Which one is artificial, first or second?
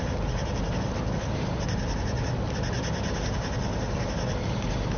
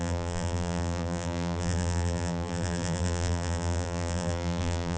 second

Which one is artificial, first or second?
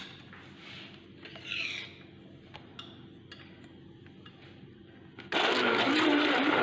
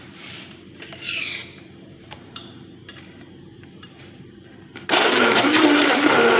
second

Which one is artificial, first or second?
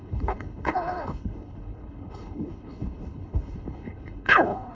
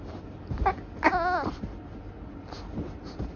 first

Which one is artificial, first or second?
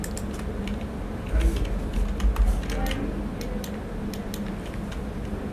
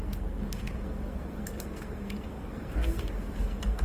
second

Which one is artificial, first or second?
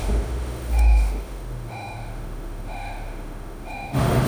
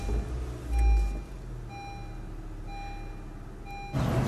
first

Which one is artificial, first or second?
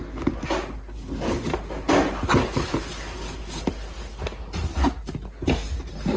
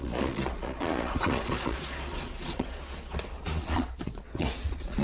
second